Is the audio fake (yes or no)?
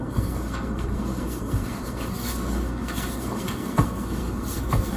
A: yes